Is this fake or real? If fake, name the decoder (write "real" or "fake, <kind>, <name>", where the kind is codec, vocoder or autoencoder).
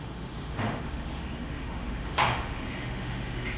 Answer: fake, autoencoder, DAC-VAE